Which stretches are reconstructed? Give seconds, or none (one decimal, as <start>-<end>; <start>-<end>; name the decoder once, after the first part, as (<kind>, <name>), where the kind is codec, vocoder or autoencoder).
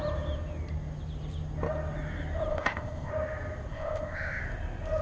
2.5-3.1 (codec, ZipCodec); 3.7-4.4